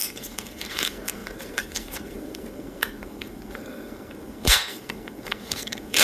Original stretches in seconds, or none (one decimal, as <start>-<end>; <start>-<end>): none